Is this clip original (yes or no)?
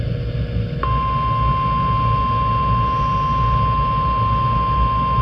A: yes